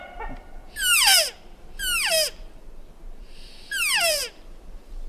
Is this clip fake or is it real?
fake